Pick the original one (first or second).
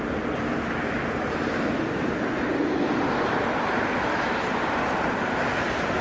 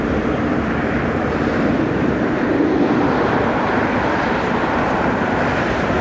first